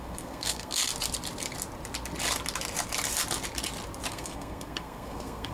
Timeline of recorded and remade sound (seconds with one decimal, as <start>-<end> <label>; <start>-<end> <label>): 0.0-0.8 remade; 0.8-4.1 recorded; 4.1-5.5 remade